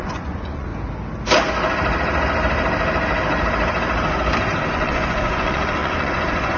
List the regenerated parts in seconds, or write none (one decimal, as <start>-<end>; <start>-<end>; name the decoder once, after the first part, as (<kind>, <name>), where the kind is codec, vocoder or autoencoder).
0.0-0.7 (vocoder, Vocos); 4.7-6.6